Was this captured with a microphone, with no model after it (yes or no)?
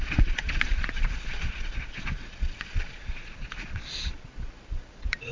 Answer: no